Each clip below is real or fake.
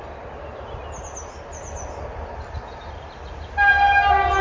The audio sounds real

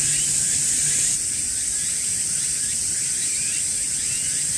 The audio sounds real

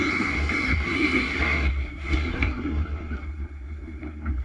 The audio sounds fake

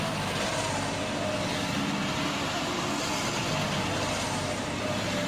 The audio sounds real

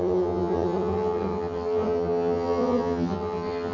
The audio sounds fake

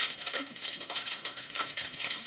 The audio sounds fake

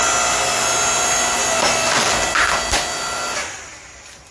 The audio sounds real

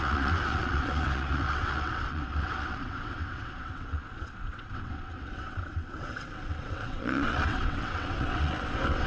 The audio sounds fake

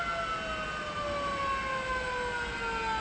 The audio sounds real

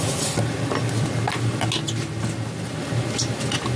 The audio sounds real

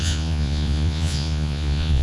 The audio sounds fake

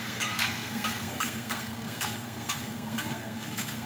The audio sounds fake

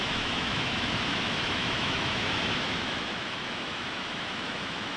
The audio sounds fake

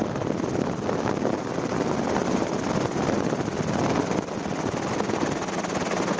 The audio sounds real